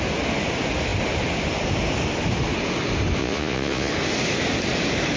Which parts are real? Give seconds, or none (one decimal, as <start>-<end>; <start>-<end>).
0.0-3.2; 3.9-5.2